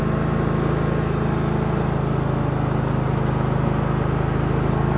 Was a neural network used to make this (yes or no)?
no